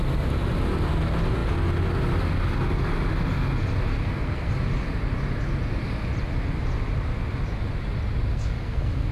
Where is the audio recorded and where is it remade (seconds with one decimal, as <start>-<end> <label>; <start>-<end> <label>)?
0.0-3.9 recorded; 3.9-4.5 remade; 4.5-8.3 recorded; 8.3-9.1 remade